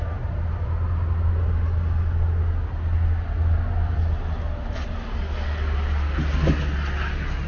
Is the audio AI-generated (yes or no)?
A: no